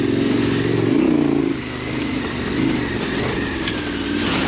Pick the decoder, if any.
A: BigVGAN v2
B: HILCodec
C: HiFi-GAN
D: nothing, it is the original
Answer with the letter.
D